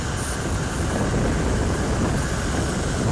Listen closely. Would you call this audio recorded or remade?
recorded